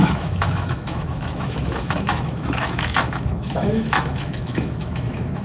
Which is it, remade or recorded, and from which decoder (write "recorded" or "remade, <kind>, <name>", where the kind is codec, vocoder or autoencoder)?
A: remade, autoencoder, DAC-VAE